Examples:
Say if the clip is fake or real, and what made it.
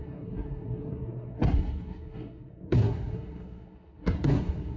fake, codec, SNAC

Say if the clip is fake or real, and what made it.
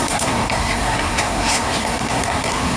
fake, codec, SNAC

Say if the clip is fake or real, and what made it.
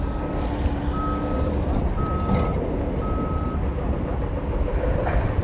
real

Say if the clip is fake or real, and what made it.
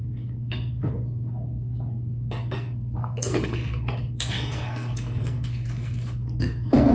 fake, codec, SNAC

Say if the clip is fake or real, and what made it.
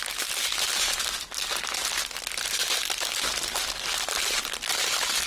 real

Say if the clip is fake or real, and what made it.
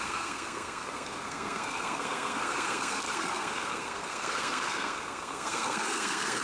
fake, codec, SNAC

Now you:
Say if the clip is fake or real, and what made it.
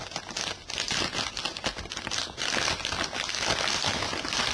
real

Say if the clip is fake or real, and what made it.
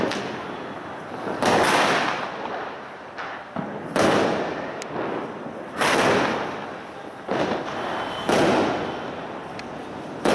real